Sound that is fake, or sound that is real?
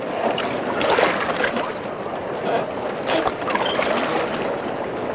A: real